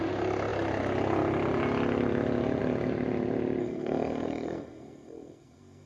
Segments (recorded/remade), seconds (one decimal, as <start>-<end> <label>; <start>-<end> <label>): 0.0-3.6 recorded; 3.6-5.9 remade